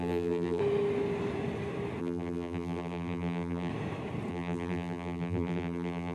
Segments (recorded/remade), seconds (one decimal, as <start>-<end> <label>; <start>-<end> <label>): 0.0-0.6 remade; 0.6-2.0 recorded; 2.0-3.7 remade; 3.7-4.3 recorded; 4.3-6.1 remade